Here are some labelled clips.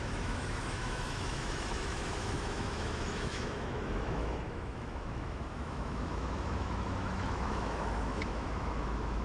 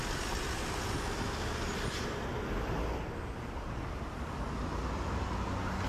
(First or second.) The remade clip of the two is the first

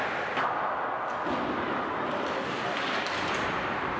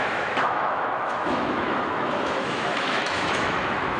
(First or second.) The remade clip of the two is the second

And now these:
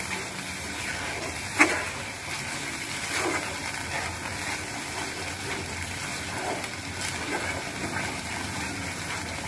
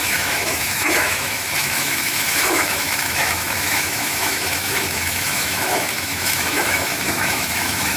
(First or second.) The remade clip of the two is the second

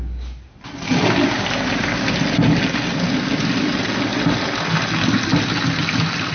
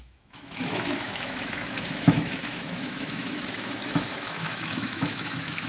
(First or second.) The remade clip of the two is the second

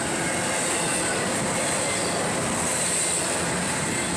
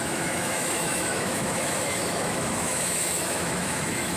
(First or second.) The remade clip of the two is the second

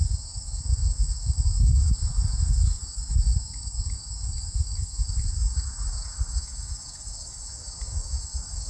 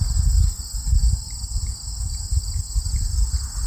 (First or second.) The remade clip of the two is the first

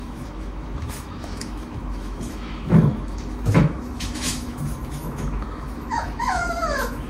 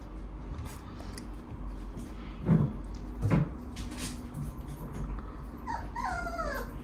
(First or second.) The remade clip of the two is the first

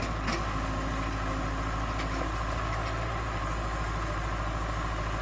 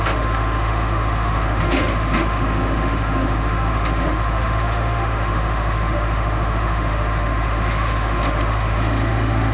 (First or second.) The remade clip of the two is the second